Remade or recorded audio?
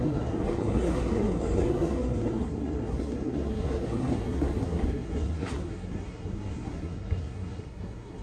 remade